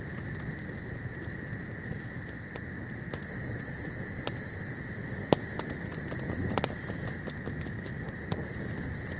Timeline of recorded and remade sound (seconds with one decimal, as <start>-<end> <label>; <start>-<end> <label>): 0.0-9.2 recorded